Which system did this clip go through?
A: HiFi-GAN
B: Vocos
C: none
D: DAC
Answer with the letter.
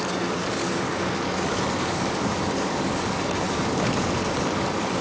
D